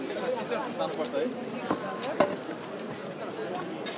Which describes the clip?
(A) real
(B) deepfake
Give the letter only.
A